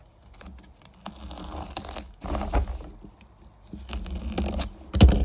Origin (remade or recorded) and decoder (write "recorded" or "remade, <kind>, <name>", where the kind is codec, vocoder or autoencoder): recorded